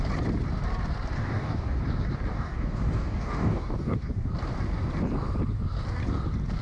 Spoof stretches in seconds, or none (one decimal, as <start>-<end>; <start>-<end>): 1.2-1.8; 2.3-4.1

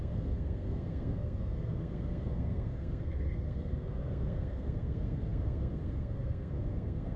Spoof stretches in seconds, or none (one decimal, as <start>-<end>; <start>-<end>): 0.0-7.2

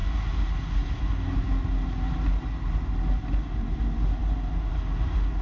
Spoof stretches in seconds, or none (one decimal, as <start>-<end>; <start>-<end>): none

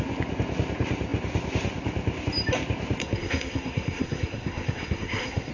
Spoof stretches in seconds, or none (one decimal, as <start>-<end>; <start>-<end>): 3.0-5.5

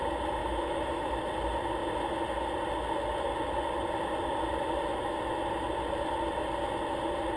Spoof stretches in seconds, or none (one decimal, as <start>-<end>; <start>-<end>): 0.4-1.1

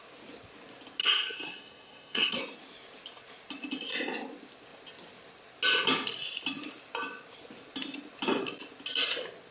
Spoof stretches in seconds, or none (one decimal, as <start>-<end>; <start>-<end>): 1.0-2.4